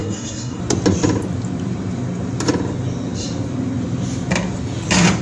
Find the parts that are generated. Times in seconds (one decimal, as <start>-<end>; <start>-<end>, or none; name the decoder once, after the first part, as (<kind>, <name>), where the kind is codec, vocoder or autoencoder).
0.0-0.6 (codec, SNAC)